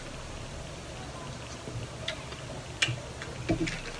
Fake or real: real